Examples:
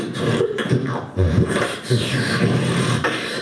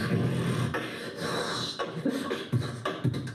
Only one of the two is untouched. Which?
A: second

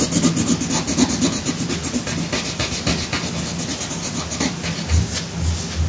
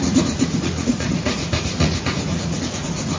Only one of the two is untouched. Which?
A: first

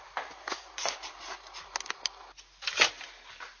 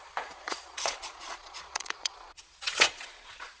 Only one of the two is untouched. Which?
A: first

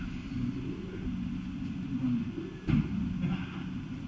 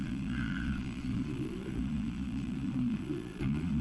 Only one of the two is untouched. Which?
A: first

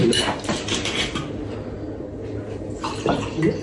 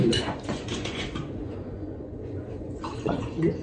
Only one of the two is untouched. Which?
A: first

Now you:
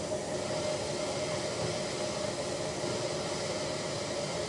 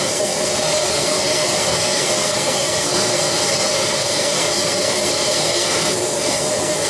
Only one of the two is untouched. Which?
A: first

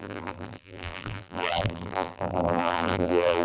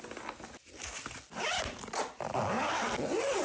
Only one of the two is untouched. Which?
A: second